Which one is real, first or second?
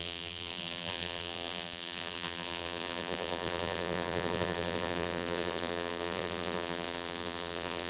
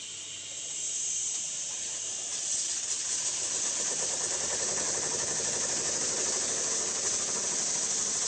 second